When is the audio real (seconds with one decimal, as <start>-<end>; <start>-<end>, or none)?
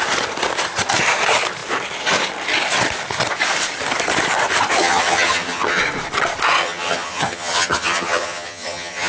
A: 0.0-4.8; 5.8-6.6